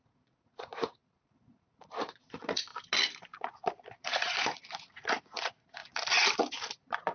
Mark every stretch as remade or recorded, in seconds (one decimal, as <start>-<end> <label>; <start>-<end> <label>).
0.0-2.7 remade; 2.7-4.0 recorded; 4.0-5.8 remade; 5.8-6.4 recorded; 6.4-7.1 remade